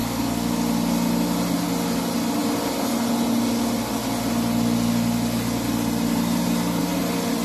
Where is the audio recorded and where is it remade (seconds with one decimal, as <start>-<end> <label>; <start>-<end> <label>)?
0.0-0.5 remade; 0.5-7.4 recorded